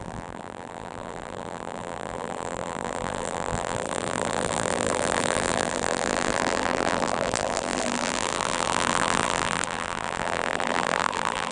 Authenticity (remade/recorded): remade